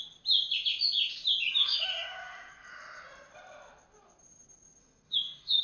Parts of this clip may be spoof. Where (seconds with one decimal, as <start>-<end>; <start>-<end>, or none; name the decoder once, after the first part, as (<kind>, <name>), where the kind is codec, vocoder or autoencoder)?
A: 1.6-2.5 (autoencoder, DAC-VAE); 4.8-5.6